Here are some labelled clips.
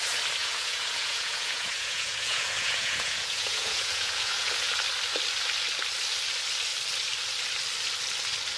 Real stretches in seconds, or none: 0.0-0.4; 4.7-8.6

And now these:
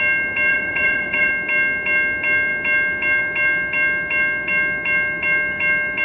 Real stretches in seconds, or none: 0.0-0.5; 1.3-6.0

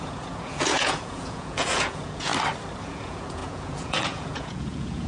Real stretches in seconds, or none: 2.3-2.8